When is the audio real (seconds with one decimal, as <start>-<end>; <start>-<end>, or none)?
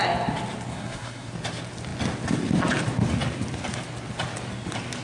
0.0-0.7; 1.3-5.0